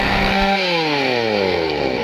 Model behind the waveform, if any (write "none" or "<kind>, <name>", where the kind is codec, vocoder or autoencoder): codec, SNAC